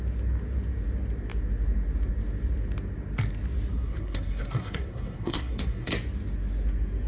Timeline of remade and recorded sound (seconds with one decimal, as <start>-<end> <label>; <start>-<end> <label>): 0.0-3.7 recorded; 3.7-5.9 remade; 5.9-7.1 recorded